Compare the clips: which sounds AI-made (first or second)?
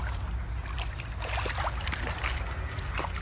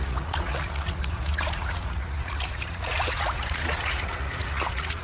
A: second